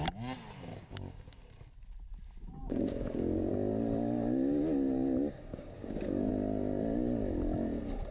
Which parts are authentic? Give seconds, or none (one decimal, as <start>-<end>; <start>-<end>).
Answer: 0.0-0.7; 1.4-2.6; 3.5-5.5; 6.3-8.1